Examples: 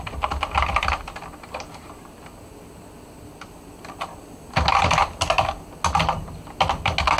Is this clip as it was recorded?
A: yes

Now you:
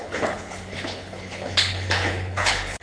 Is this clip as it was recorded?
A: no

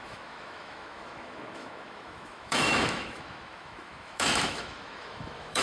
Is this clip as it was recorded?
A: no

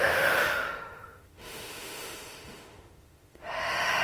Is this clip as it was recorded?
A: no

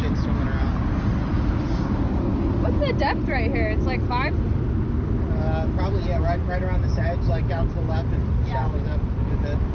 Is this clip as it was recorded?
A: yes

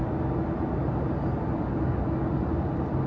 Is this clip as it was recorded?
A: yes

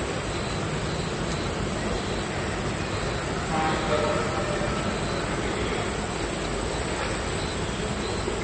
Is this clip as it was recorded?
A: yes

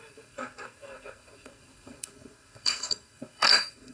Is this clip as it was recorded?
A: no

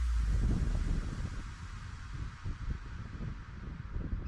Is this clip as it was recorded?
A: yes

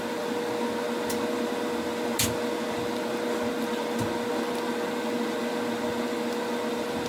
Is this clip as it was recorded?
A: yes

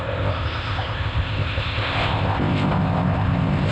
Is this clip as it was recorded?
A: no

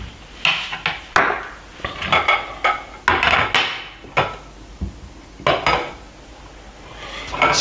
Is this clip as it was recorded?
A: yes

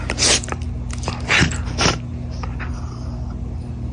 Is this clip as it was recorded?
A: yes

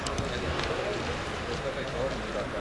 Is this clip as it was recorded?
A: yes